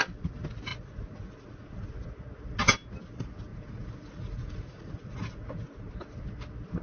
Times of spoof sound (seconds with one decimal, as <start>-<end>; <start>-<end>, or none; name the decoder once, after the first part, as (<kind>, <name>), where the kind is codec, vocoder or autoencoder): 0.7-1.9 (vocoder, Vocos); 3.5-5.9